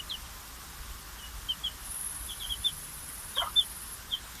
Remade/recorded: recorded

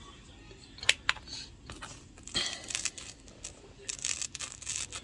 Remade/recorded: recorded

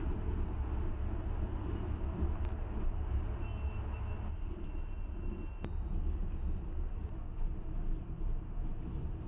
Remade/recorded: recorded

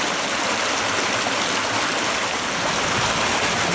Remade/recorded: recorded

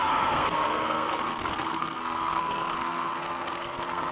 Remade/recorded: remade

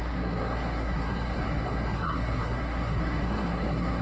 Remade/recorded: remade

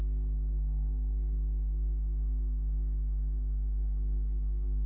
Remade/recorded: remade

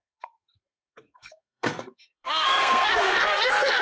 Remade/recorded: remade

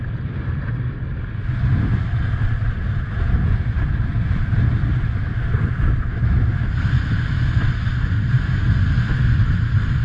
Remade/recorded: recorded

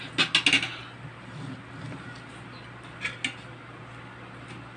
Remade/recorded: recorded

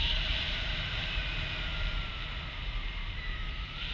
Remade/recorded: recorded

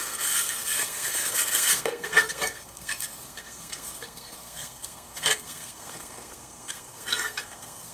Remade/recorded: remade